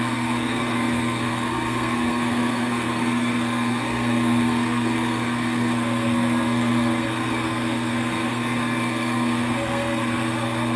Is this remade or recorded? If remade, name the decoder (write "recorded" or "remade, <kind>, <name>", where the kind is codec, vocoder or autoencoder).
remade, codec, SNAC